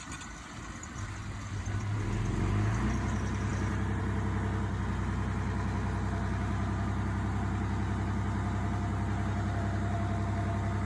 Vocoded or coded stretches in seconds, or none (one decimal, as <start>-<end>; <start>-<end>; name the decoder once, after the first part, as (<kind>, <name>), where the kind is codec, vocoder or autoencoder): none